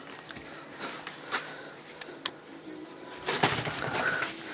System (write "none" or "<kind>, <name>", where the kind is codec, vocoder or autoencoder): none